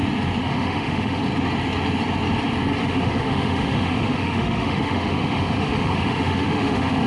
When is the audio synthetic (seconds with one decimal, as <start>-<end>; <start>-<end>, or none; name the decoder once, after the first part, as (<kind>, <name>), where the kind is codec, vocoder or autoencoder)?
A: 0.4-1.2 (autoencoder, DAC-VAE); 2.8-7.1